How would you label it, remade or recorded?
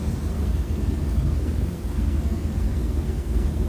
remade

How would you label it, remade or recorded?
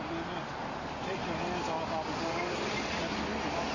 recorded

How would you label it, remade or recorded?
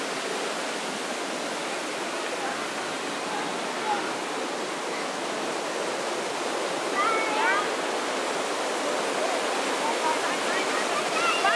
recorded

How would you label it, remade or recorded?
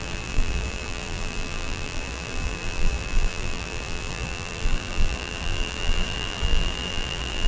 remade